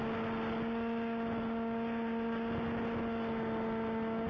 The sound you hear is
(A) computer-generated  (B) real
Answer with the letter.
B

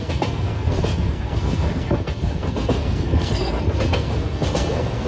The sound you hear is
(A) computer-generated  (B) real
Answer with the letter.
A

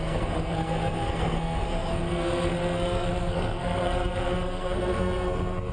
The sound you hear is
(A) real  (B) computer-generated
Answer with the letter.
B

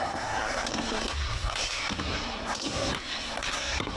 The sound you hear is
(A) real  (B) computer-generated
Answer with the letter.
B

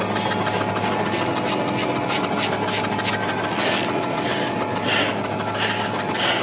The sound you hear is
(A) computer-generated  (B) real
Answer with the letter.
B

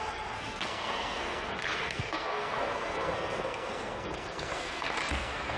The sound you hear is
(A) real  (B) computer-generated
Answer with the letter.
B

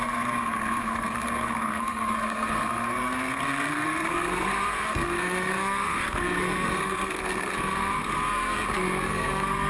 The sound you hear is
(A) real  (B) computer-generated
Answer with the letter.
B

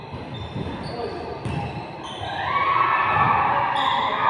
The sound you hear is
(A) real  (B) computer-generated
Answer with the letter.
A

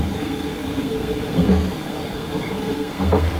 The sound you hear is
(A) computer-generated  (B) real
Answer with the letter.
A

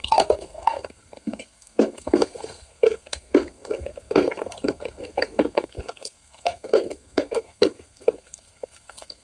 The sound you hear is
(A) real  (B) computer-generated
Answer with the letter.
B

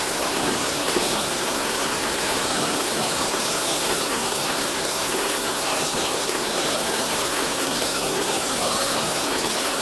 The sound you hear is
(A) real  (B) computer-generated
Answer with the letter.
B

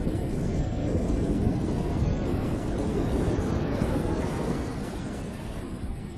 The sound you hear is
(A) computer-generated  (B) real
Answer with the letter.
A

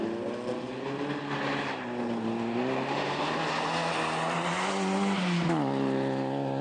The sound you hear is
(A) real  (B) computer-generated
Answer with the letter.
A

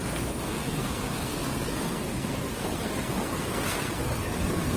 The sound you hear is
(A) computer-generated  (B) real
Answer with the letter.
A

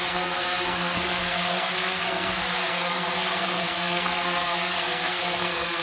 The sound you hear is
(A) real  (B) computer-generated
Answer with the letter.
B